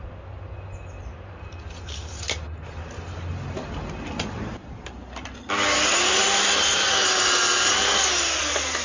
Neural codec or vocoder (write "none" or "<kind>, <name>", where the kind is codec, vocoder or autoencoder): none